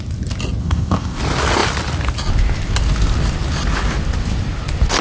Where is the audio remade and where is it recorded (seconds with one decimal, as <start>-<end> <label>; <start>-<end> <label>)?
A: 0.0-0.6 recorded; 0.6-1.2 remade; 1.2-5.0 recorded